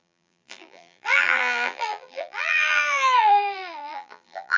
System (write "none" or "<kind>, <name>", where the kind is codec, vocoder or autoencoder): vocoder, BigVGAN v2